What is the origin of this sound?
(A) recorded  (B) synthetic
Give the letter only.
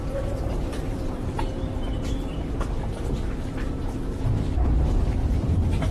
B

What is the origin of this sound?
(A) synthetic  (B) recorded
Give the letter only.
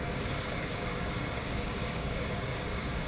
A